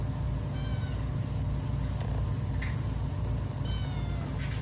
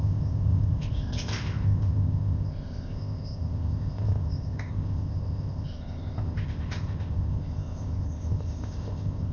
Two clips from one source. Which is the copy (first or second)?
second